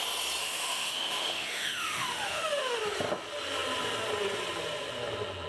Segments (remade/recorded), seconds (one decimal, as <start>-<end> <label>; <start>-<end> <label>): 0.0-0.4 recorded; 0.4-2.8 remade; 2.8-5.5 recorded